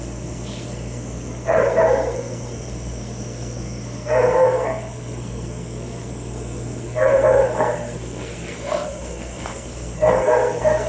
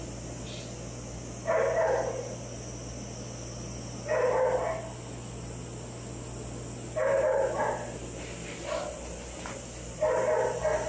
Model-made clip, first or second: first